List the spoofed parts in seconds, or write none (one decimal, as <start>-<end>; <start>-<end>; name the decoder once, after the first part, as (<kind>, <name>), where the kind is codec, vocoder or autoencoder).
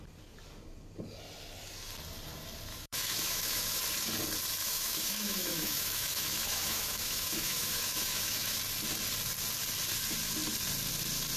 2.7-3.8 (autoencoder, DAC-VAE); 4.6-8.6